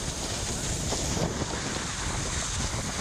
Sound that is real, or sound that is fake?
real